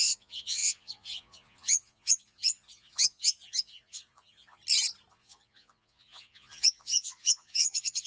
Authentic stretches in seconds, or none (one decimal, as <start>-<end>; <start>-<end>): 4.6-5.1